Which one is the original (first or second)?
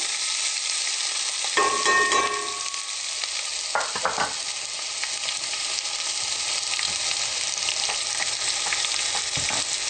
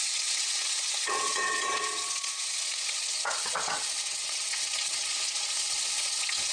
first